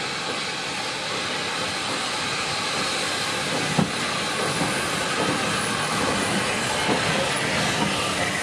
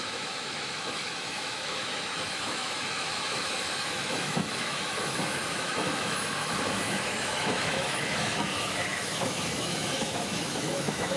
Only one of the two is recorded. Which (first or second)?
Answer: first